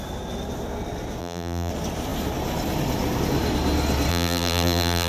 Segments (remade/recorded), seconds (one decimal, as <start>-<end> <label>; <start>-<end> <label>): 0.0-1.2 recorded; 1.2-1.7 remade; 1.7-4.1 recorded; 4.1-5.1 remade